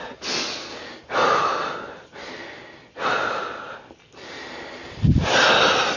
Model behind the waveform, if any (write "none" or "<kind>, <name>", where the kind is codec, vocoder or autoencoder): none